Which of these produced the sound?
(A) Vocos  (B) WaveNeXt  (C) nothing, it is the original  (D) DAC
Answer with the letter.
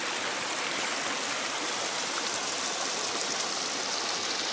C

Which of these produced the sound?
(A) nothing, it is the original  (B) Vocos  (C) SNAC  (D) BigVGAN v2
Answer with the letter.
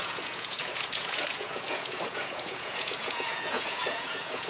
B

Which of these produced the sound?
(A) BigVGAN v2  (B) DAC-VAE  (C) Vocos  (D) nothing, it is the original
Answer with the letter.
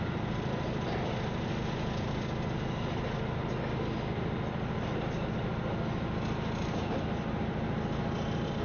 D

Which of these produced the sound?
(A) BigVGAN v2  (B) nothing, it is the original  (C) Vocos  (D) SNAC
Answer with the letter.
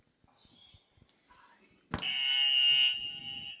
B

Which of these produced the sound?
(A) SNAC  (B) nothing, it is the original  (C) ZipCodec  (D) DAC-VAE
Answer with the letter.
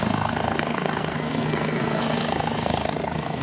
A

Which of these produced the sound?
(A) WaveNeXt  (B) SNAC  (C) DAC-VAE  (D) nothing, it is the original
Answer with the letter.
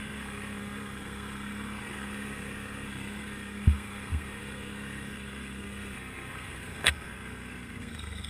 B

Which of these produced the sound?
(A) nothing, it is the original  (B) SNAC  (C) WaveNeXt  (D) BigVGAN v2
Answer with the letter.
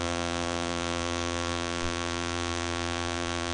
D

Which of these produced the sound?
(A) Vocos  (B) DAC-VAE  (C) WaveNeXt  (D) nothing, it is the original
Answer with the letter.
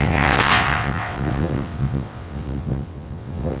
C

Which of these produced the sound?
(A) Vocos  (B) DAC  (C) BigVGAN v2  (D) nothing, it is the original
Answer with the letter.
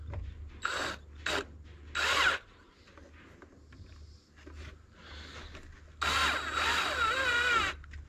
D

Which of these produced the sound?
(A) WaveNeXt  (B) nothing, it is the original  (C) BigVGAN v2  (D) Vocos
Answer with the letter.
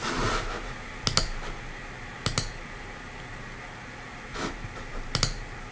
B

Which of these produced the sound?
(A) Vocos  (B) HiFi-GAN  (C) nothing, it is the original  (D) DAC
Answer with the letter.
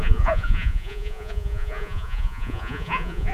A